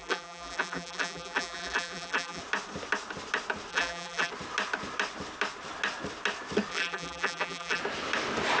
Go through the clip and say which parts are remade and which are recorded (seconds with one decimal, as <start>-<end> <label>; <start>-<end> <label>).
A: 0.0-2.4 remade; 2.4-3.7 recorded; 3.7-4.3 remade; 4.3-6.7 recorded; 6.7-7.8 remade; 7.8-8.6 recorded